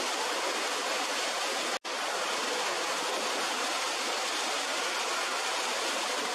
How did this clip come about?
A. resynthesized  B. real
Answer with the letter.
B